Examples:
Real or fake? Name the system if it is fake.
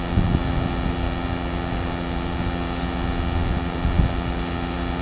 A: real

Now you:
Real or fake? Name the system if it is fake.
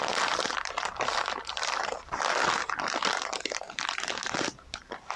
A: real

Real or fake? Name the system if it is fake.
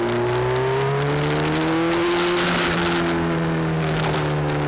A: real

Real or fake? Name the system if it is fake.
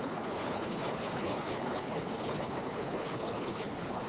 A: fake, codec, HILCodec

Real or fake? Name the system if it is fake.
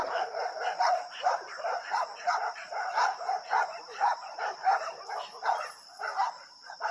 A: fake, vocoder, BigVGAN v2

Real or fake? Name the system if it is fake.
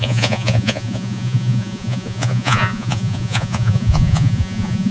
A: fake, vocoder, Vocos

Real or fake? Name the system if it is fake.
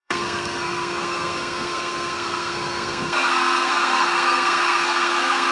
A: fake, codec, SNAC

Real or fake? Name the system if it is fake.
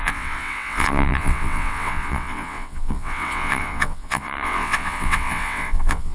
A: fake, vocoder, WaveNeXt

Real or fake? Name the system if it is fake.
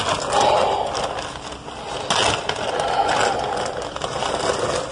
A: real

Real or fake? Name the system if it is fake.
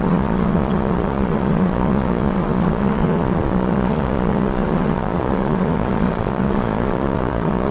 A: fake, vocoder, Vocos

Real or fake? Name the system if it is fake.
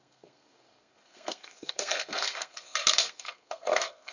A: fake, codec, SNAC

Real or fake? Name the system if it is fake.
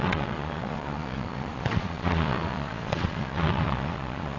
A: fake, vocoder, Vocos